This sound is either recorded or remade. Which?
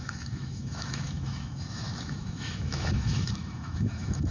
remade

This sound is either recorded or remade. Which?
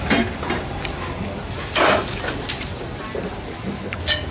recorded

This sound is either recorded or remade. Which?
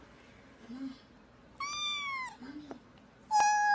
recorded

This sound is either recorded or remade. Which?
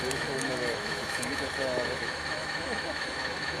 remade